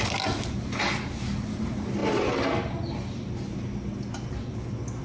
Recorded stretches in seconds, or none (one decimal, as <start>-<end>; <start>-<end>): 0.0-5.0